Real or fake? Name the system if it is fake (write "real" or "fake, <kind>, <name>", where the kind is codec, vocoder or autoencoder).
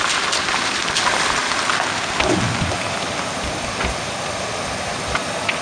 real